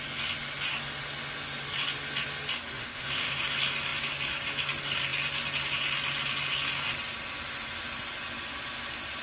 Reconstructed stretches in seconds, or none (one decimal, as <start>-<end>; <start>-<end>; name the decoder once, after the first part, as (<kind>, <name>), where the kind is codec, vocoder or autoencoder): 2.8-3.4 (autoencoder, DAC-VAE)